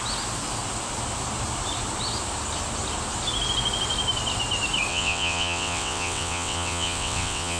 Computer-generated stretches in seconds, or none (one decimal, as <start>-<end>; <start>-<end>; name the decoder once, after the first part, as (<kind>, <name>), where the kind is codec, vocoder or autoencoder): 4.9-7.6 (vocoder, WaveNeXt)